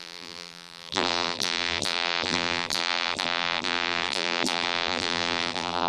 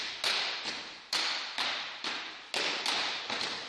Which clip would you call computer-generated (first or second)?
first